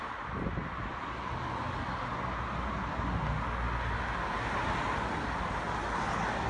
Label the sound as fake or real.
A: real